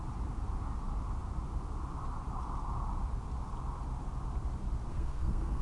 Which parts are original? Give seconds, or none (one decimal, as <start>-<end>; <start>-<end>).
0.0-4.9